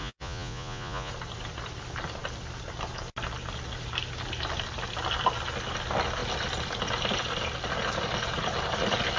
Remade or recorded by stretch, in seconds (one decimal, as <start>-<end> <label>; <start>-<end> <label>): 0.0-1.1 remade; 1.1-9.2 recorded